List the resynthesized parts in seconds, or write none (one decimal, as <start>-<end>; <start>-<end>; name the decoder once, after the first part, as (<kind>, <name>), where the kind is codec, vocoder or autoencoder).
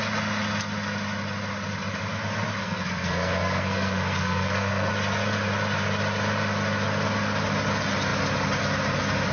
2.6-4.9 (codec, SNAC)